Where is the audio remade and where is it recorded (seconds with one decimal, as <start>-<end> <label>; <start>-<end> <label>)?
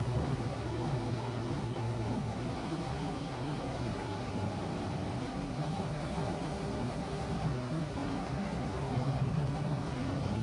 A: 0.0-4.5 remade; 4.5-5.2 recorded; 5.2-10.4 remade